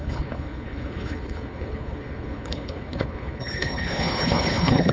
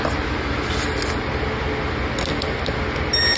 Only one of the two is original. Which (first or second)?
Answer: second